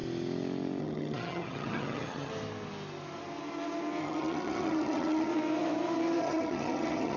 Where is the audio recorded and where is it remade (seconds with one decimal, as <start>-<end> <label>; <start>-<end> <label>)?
0.0-0.8 recorded; 0.8-2.3 remade; 2.3-4.0 recorded; 4.0-5.3 remade; 5.3-6.2 recorded; 6.2-7.2 remade